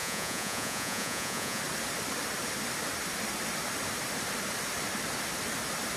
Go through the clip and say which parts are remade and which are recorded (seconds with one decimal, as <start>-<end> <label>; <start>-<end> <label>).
0.0-1.6 remade; 1.6-6.0 recorded